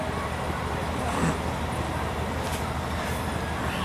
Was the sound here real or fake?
real